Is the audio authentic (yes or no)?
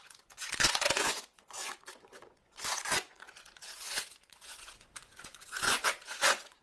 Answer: no